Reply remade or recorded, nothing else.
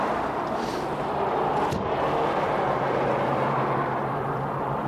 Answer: recorded